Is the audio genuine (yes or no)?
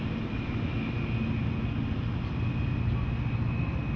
yes